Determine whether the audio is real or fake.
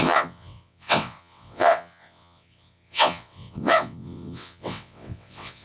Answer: fake